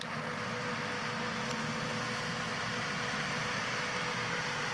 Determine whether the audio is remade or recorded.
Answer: recorded